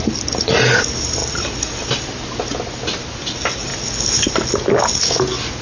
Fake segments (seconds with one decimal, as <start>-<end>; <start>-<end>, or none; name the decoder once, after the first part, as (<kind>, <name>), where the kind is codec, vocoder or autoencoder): none